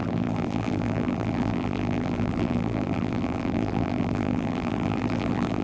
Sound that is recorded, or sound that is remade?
remade